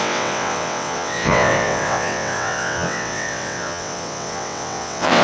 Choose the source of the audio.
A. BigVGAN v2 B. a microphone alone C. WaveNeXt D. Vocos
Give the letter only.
C